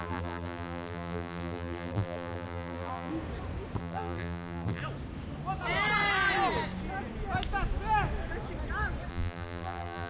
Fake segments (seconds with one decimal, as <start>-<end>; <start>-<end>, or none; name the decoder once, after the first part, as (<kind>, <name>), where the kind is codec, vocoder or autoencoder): 0.0-3.1 (vocoder, BigVGAN v2); 3.8-4.8; 9.1-10.1

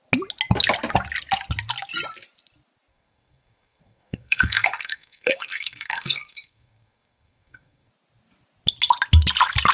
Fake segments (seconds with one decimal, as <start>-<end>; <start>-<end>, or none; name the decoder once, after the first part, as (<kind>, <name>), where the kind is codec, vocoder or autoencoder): 2.9-7.9 (codec, SNAC)

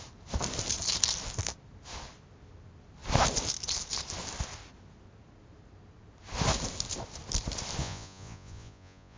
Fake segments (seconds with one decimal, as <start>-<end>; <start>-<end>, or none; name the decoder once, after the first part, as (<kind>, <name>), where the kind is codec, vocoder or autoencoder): 7.8-9.2 (vocoder, Vocos)

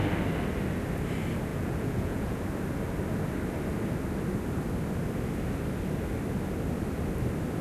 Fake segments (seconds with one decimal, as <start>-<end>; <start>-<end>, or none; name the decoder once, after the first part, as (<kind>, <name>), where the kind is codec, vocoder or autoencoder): 1.5-2.4 (vocoder, Vocos)

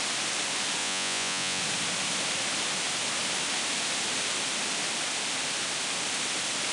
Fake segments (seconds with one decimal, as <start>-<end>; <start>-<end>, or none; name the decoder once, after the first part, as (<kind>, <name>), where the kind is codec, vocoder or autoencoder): 0.8-1.6 (vocoder, Vocos)